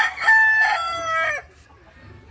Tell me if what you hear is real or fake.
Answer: real